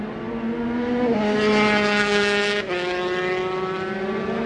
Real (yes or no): yes